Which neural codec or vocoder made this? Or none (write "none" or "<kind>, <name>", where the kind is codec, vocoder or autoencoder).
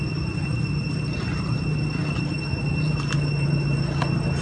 none